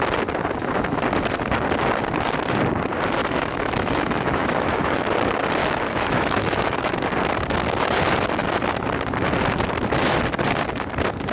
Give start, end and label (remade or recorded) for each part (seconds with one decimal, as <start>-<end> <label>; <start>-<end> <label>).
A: 0.0-3.2 recorded; 3.2-5.0 remade; 5.0-5.6 recorded; 5.6-6.9 remade; 6.9-11.3 recorded